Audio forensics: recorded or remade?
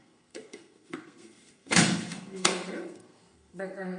remade